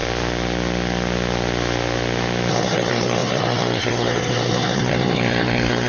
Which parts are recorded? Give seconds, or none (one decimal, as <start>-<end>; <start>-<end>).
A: 0.0-2.5